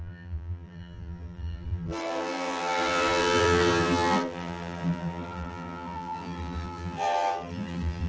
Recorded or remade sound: remade